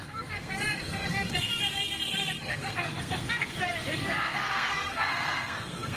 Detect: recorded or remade remade